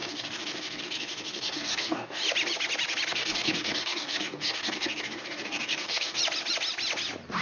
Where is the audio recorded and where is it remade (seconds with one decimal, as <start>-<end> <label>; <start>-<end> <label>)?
0.0-2.2 remade; 2.2-3.1 recorded; 3.1-6.2 remade; 6.2-7.4 recorded